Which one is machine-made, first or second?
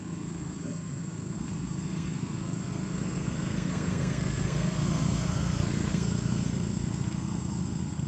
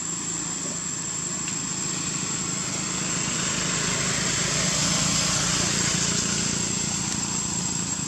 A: first